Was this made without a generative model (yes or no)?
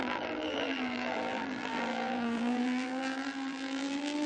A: no